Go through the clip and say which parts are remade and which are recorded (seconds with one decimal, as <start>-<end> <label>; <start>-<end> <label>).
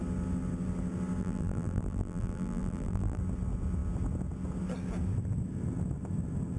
0.0-1.2 recorded; 1.2-3.2 remade; 3.2-6.6 recorded